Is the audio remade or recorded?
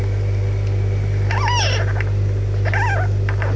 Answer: recorded